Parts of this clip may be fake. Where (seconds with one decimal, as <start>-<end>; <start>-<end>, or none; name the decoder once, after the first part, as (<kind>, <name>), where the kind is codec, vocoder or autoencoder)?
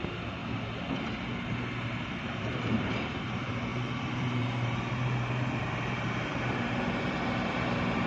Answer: 0.0-0.4 (vocoder, BigVGAN v2); 2.1-8.1